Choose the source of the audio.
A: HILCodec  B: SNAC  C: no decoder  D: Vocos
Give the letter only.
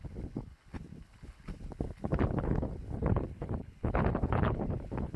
A